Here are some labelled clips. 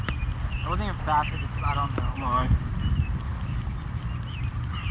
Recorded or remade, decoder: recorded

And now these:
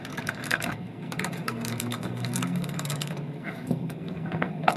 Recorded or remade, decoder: remade, codec, SNAC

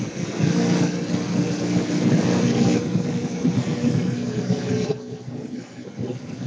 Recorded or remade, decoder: remade, codec, SNAC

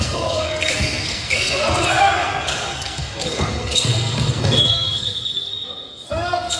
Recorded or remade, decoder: remade, codec, SNAC